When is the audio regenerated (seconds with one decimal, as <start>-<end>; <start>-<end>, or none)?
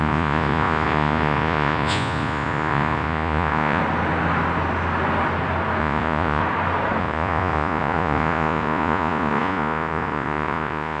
0.0-3.8; 5.8-6.4; 7.0-11.0